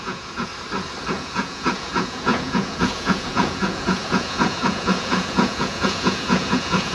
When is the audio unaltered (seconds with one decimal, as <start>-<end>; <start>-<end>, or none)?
0.5-1.1